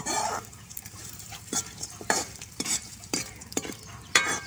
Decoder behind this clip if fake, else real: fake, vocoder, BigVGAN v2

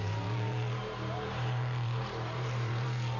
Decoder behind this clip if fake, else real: fake, vocoder, BigVGAN v2